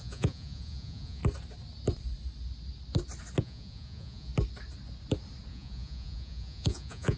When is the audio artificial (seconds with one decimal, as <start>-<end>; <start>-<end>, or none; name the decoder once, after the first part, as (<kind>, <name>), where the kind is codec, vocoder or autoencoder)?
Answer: 0.0-1.2 (vocoder, Vocos); 3.4-4.3; 5.5-7.2